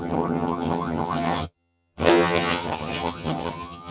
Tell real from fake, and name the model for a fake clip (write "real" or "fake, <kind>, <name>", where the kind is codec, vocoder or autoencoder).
fake, vocoder, HiFi-GAN